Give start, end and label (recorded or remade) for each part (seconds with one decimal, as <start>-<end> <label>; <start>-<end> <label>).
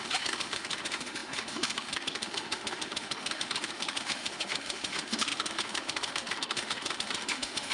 0.0-7.7 remade